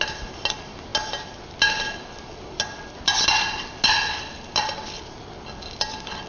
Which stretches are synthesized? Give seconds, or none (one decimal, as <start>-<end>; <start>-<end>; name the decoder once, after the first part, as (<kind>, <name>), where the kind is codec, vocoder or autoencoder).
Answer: none